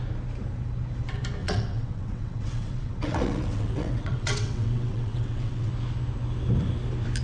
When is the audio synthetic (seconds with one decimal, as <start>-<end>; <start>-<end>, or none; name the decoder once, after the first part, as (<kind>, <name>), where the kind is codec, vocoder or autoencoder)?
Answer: 1.4-5.7 (vocoder, WaveNeXt)